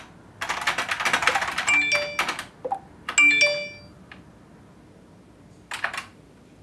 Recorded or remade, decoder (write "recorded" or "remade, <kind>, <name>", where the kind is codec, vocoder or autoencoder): recorded